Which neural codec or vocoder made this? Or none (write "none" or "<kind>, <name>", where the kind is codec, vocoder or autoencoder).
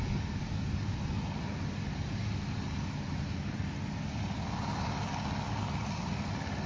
none